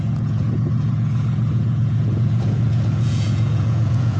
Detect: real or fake fake